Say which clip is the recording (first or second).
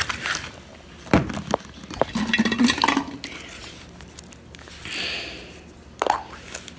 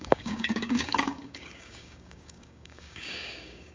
first